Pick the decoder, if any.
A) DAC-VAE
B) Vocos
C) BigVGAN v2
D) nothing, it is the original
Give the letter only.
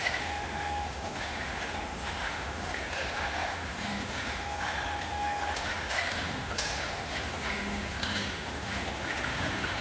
A